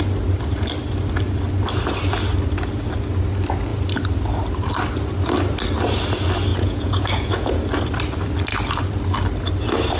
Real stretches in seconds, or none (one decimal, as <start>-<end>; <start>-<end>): 0.0-6.5; 7.6-10.0